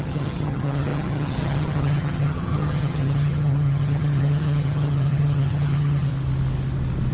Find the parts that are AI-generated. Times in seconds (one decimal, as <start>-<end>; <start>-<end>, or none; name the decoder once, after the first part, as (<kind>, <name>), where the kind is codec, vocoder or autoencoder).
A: 0.0-6.1 (vocoder, HiFi-GAN)